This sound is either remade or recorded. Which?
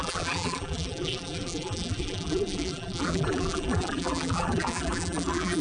remade